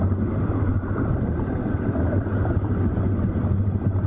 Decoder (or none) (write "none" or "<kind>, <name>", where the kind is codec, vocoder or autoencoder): none